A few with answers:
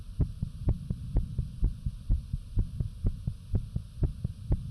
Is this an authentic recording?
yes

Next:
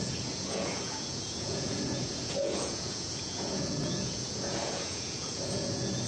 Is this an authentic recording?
no